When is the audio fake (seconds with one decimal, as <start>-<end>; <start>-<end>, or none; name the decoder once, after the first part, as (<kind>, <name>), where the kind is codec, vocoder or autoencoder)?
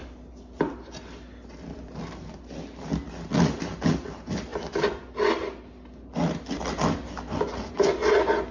none